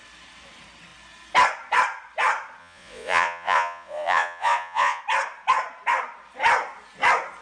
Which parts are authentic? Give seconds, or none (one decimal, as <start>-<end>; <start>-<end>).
0.0-2.6; 5.0-7.4